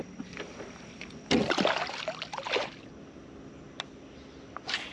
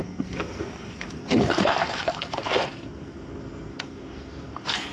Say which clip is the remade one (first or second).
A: second